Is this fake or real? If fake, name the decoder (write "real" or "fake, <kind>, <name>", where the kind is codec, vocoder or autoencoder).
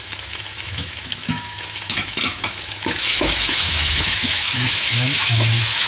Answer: fake, autoencoder, DAC-VAE